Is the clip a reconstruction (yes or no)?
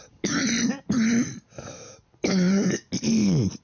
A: no